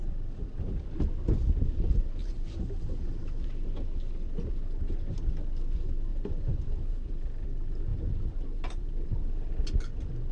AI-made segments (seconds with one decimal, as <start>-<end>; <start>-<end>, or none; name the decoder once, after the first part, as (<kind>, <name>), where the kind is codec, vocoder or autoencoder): 2.2-3.2 (vocoder, BigVGAN v2); 6.1-7.1; 7.9-9.5